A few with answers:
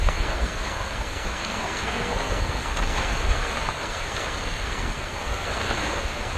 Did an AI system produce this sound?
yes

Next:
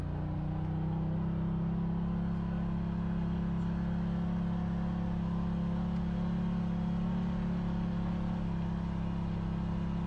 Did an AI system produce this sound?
no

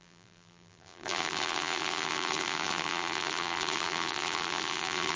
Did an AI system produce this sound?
yes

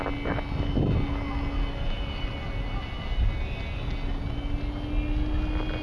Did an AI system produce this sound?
no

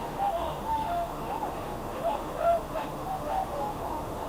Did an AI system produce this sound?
yes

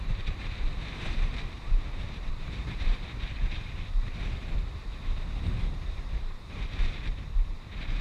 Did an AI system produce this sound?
yes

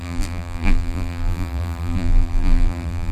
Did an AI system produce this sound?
yes